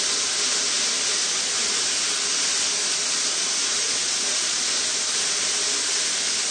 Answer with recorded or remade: recorded